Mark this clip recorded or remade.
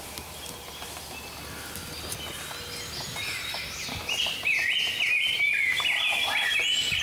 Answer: recorded